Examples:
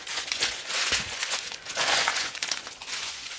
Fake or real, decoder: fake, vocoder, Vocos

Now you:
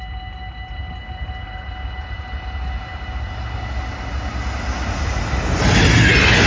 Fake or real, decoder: real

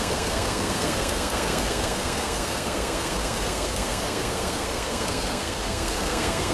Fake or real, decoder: fake, codec, SNAC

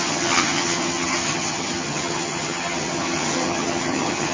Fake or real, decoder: fake, vocoder, HiFi-GAN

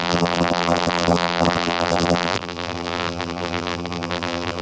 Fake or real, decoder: fake, vocoder, BigVGAN v2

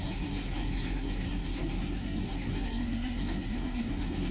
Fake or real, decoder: fake, codec, SNAC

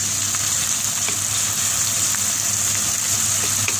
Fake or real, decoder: real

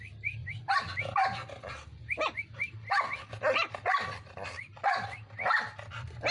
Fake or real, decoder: real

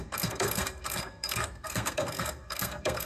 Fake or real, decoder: fake, codec, SNAC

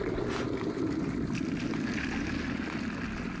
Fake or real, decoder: real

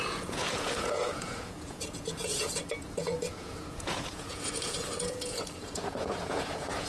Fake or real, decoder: fake, vocoder, Vocos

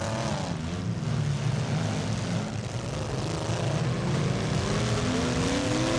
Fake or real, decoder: real